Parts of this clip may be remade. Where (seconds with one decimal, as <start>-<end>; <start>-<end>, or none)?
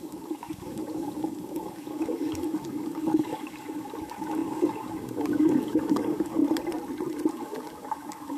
0.0-6.4; 7.3-8.4